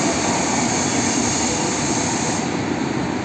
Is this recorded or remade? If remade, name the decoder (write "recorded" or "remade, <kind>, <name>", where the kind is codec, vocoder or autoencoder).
recorded